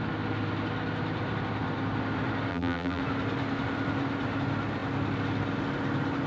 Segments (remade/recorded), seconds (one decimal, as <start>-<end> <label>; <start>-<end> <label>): 0.0-2.5 recorded; 2.5-3.0 remade; 3.0-6.3 recorded